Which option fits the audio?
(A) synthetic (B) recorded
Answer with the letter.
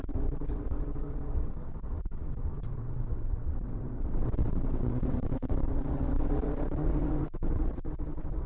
A